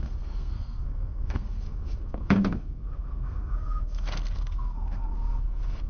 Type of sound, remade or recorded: remade